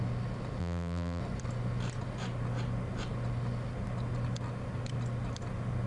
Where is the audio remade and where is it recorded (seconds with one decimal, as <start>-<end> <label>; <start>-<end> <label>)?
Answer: 0.0-0.6 recorded; 0.6-1.2 remade; 1.2-5.9 recorded